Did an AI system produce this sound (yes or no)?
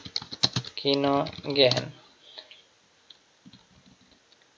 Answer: no